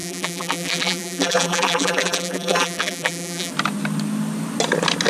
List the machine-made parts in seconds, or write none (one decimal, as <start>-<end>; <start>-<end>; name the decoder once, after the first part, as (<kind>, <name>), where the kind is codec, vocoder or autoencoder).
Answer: 0.0-3.5 (vocoder, BigVGAN v2)